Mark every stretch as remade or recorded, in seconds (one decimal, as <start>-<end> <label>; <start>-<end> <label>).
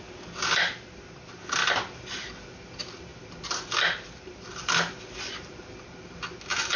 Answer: 0.0-6.8 recorded